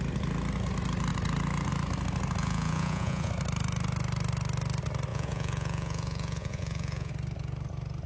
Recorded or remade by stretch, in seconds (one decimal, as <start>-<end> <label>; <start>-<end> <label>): 0.0-2.4 recorded; 2.4-3.3 remade; 3.3-5.1 recorded; 5.1-7.1 remade; 7.1-8.1 recorded